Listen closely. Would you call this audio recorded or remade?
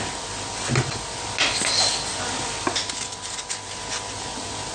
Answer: recorded